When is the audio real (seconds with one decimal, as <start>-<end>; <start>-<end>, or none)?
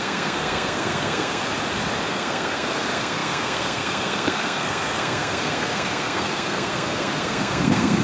1.4-2.1